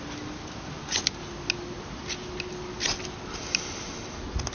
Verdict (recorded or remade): recorded